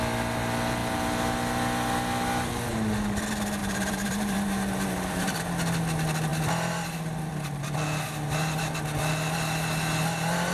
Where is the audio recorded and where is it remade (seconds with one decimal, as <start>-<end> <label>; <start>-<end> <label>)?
0.0-3.6 recorded; 3.6-5.4 remade; 5.4-10.5 recorded